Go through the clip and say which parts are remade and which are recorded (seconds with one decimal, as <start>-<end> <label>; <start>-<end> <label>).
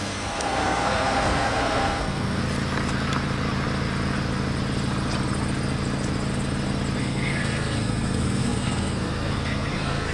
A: 0.0-2.4 remade; 2.4-7.0 recorded; 7.0-10.1 remade